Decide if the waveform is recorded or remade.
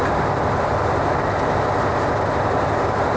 recorded